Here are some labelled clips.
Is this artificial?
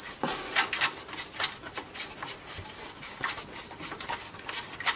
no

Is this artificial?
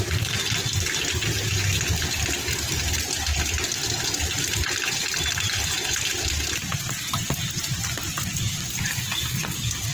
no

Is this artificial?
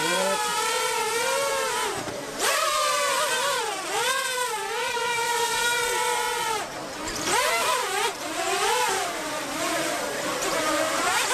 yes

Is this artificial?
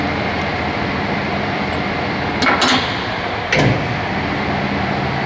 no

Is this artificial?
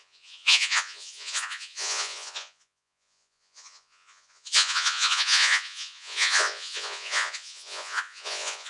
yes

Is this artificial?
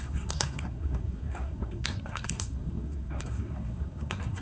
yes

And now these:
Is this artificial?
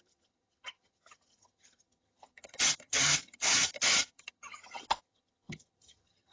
yes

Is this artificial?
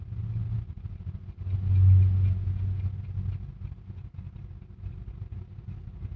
no